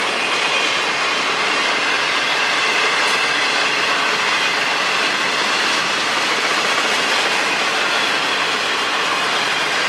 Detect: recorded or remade remade